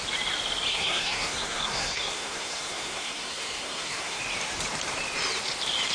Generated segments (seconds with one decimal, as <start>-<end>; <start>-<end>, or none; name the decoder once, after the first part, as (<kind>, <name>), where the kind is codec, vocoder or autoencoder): 0.7-4.2 (codec, SNAC)